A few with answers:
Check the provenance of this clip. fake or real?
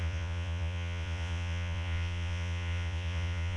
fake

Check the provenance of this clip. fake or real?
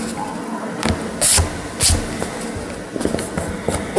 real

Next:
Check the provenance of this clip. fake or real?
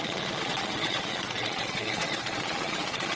fake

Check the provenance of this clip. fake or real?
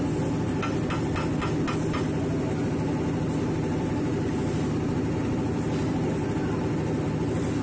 real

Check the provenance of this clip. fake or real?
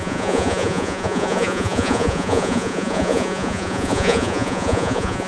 fake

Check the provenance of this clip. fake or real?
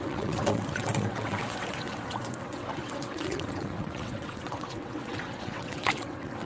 fake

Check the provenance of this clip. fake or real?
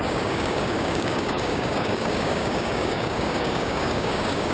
fake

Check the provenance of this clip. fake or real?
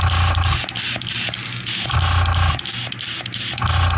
real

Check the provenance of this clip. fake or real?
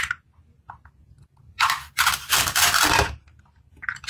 real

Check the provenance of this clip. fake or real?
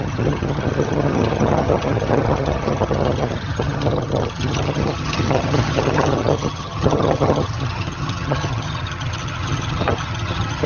fake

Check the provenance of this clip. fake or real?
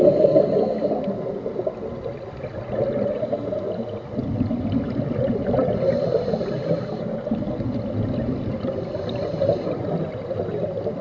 real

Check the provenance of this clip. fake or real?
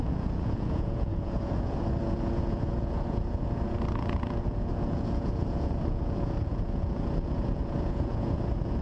fake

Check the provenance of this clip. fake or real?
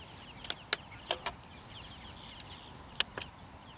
real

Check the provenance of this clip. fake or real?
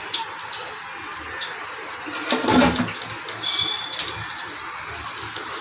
real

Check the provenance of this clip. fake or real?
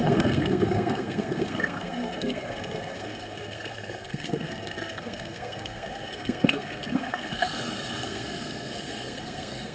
fake